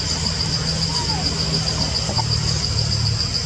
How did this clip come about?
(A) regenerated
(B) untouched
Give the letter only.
B